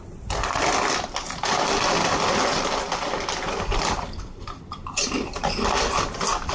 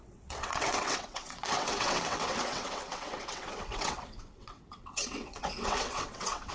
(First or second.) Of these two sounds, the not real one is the second